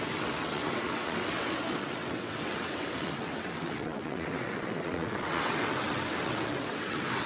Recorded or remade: remade